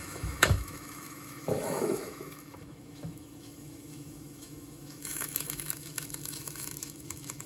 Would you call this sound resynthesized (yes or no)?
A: yes